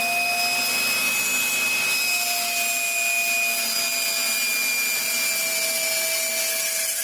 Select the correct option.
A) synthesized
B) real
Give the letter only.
B